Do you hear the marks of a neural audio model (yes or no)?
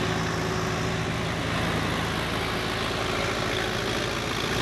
no